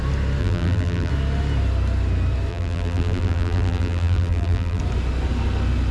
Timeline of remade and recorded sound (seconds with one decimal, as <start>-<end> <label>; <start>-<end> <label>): 0.0-0.4 recorded; 0.4-1.1 remade; 1.1-2.5 recorded; 2.5-4.8 remade; 4.8-5.9 recorded